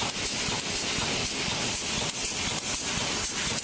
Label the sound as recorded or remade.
recorded